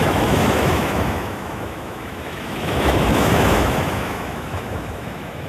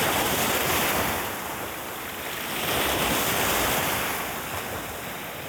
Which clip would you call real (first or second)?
second